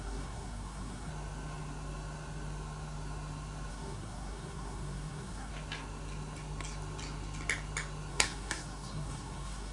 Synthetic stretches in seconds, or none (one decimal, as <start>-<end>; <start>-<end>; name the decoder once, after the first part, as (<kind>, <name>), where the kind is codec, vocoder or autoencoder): 0.0-1.1 (codec, SNAC); 3.7-5.5; 8.1-9.7